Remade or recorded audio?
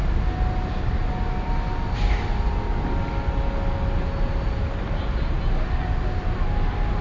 recorded